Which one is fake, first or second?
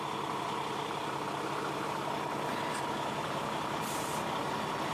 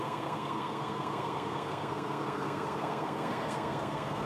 second